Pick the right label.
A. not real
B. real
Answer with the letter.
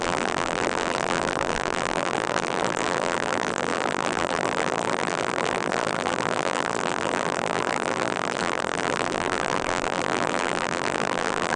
A